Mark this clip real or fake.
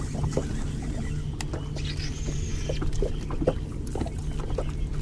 real